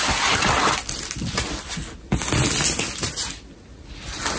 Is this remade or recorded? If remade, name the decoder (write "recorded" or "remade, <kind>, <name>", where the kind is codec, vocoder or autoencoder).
recorded